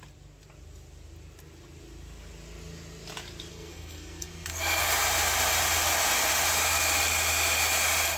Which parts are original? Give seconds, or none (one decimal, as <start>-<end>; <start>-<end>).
0.0-3.5; 4.8-8.2